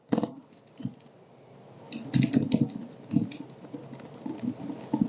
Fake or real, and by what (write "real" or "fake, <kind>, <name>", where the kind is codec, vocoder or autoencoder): real